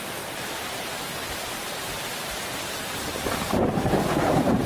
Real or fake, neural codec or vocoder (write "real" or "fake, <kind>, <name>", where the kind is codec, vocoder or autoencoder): fake, vocoder, BigVGAN v2